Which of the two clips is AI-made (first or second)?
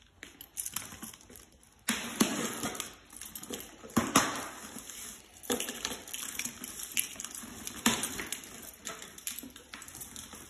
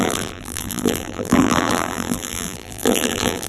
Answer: second